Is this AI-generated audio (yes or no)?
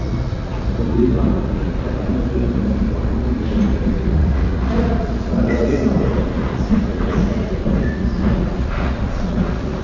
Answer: yes